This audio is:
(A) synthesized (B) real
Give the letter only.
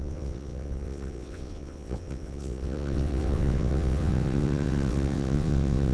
A